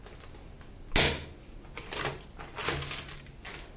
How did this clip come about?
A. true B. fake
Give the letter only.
A